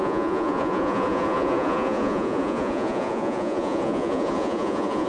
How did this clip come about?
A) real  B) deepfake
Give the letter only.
B